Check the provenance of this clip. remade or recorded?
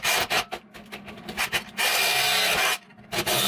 recorded